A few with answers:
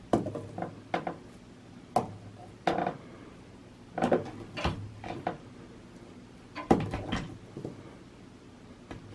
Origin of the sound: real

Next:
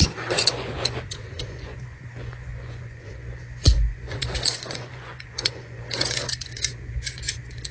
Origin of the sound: fake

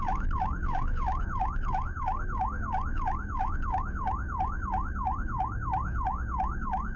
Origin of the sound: fake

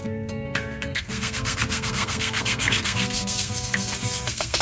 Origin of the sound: fake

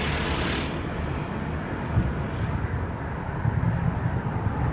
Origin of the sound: real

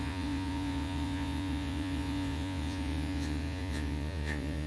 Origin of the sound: fake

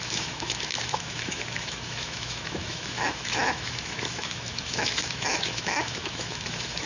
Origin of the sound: fake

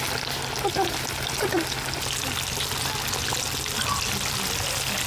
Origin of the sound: real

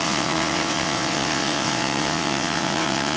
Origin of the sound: fake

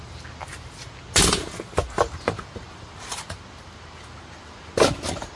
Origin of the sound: real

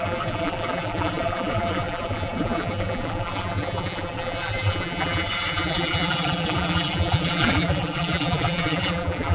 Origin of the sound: fake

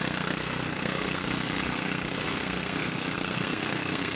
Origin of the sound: fake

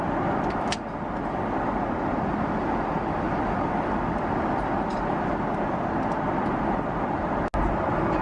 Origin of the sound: real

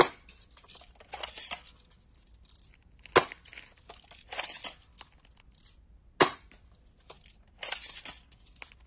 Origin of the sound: real